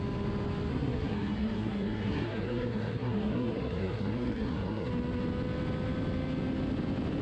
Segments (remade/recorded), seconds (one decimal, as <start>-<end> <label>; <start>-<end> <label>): 0.0-0.7 recorded; 0.7-4.9 remade; 4.9-7.2 recorded